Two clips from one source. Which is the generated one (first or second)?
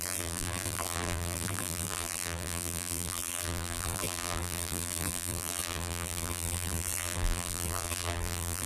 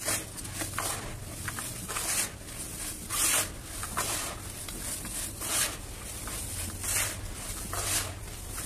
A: first